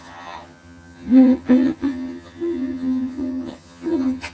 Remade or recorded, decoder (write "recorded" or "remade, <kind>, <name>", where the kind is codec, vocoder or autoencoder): remade, vocoder, HiFi-GAN